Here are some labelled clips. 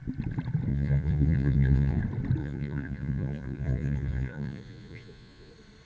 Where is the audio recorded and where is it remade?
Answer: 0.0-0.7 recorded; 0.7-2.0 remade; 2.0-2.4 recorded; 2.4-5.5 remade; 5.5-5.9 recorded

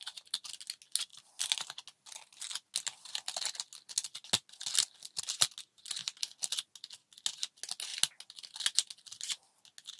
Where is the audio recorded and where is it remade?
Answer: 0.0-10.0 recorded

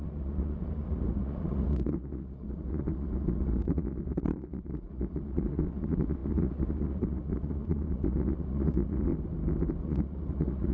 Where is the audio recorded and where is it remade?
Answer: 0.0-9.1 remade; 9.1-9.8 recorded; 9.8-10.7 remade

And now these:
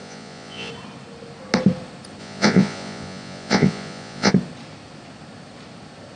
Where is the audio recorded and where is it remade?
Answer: 0.0-0.7 remade; 0.7-2.2 recorded; 2.2-4.3 remade; 4.3-6.2 recorded